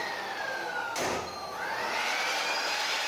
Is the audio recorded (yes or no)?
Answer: yes